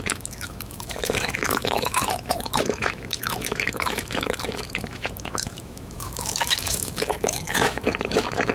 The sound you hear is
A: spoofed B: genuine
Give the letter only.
A